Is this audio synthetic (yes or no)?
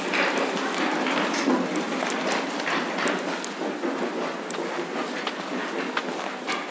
no